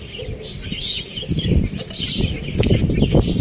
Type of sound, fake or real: real